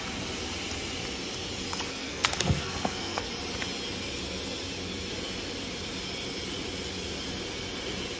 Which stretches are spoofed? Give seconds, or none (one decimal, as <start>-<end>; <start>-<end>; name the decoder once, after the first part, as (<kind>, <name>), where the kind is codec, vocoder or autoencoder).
1.9-3.3 (codec, SNAC)